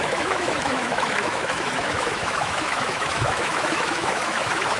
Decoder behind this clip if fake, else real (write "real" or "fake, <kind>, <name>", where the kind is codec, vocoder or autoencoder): fake, autoencoder, DAC-VAE